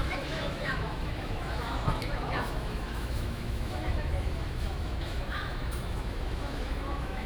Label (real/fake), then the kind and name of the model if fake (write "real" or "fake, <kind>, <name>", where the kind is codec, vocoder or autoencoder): fake, autoencoder, DAC-VAE